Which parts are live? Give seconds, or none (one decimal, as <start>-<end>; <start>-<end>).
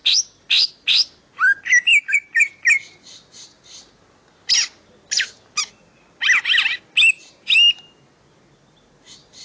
0.0-1.9; 2.5-9.4